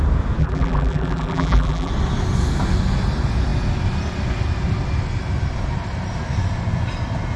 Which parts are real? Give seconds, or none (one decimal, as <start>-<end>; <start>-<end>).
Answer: 0.0-0.4; 1.9-7.4